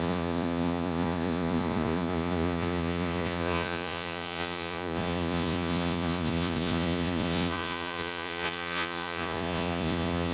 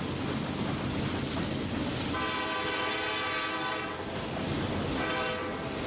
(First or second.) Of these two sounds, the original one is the second